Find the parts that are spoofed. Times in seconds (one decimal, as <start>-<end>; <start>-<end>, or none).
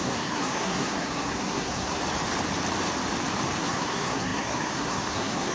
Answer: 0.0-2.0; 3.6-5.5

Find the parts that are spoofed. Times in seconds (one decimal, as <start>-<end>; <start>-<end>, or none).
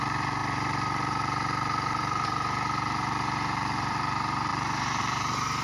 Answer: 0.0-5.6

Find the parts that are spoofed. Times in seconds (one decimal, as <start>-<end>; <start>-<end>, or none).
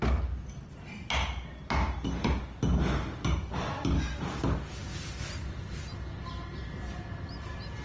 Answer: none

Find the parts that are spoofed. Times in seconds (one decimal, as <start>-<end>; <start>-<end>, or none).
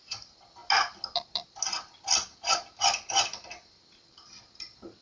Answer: none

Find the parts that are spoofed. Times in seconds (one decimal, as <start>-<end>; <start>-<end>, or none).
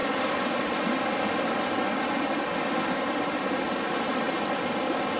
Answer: none